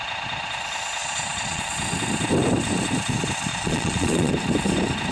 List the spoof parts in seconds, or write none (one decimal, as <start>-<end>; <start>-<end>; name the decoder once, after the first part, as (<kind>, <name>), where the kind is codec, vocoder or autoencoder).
1.0-1.6 (vocoder, Vocos); 3.5-4.3

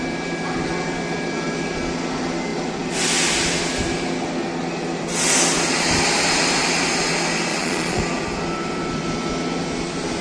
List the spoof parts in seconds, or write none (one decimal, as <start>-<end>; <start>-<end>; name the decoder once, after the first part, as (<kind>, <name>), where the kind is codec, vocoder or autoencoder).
7.5-8.0 (vocoder, Vocos)

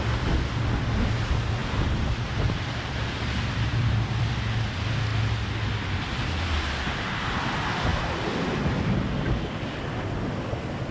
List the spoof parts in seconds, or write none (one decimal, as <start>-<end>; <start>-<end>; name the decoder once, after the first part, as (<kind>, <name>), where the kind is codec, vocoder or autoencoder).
1.6-4.2 (vocoder, BigVGAN v2)

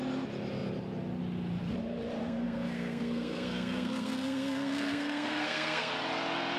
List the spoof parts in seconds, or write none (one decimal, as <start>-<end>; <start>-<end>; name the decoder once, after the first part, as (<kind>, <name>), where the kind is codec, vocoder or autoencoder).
2.2-5.9 (codec, SNAC)